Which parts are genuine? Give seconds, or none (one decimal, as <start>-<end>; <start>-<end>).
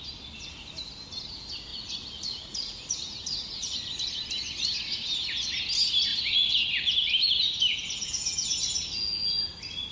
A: 0.0-1.7; 4.0-9.9